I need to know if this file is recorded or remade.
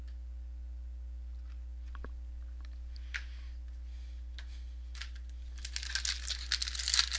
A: recorded